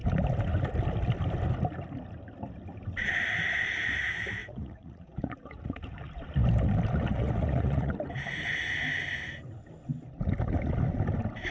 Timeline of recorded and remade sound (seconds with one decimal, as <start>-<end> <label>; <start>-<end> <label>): 0.0-4.4 recorded; 4.4-6.1 remade; 6.1-7.1 recorded; 7.1-7.9 remade; 7.9-11.5 recorded